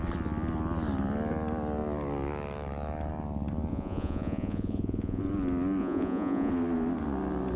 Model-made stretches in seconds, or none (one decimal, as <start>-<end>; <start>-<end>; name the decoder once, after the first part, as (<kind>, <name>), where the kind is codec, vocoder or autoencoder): 3.7-5.2 (vocoder, Vocos); 5.8-6.5